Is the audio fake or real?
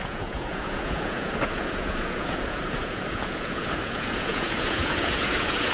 fake